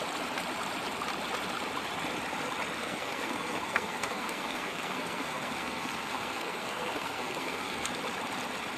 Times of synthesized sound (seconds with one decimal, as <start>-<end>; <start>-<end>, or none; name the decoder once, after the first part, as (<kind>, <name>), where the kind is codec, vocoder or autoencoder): 2.8-7.9 (codec, SNAC)